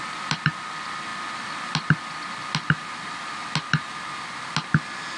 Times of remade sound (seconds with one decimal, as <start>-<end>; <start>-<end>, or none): none